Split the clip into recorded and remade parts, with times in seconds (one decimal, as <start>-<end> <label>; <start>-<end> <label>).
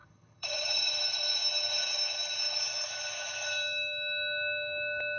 0.0-0.9 remade; 0.9-5.2 recorded